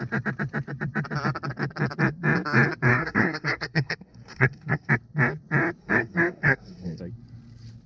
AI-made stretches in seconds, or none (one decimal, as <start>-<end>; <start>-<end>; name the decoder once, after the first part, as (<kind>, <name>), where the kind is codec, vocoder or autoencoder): 2.9-4.9 (codec, SNAC); 5.8-7.0